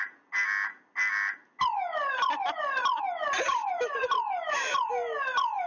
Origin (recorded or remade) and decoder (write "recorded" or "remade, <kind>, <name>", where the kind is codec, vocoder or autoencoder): recorded